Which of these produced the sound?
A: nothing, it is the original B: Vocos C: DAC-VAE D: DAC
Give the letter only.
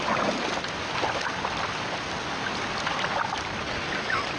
A